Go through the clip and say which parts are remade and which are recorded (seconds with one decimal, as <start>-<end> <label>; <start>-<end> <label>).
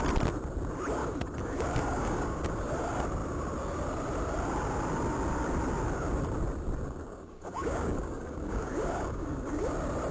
0.0-1.0 recorded; 1.0-2.5 remade; 2.5-7.0 recorded; 7.0-9.7 remade; 9.7-10.1 recorded